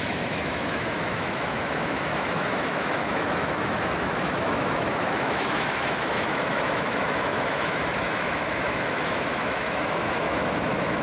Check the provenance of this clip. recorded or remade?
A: remade